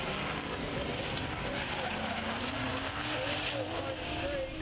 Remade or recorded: recorded